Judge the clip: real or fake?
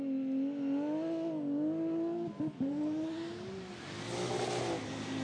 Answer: real